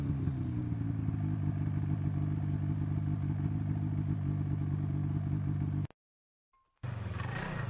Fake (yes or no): no